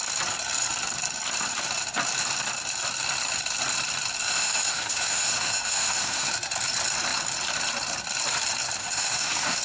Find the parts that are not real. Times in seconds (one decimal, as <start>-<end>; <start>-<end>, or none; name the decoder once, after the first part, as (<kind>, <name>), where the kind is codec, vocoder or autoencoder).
4.2-6.3 (autoencoder, DAC-VAE); 8.8-9.6